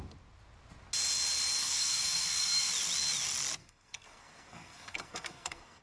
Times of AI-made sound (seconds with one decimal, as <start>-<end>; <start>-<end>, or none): 1.6-2.7; 3.6-5.8